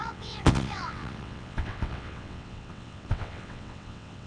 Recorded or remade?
remade